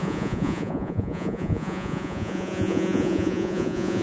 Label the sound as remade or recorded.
remade